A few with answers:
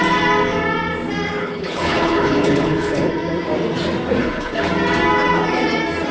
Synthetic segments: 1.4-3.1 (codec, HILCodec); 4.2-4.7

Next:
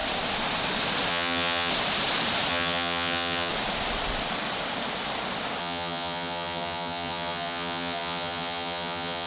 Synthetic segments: 1.1-1.7 (vocoder, HiFi-GAN); 2.5-3.5; 5.6-9.3

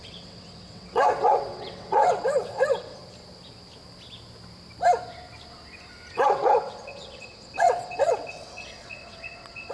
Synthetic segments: 0.0-3.0 (vocoder, WaveNeXt); 6.1-9.7

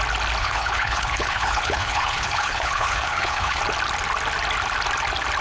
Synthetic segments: 0.4-3.6 (codec, HILCodec)

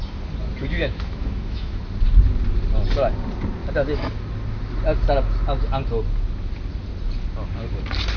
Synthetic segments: 0.6-1.8 (autoencoder, DAC-VAE)

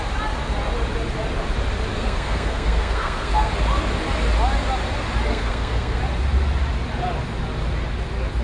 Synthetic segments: 1.9-3.5 (codec, SNAC); 5.3-6.0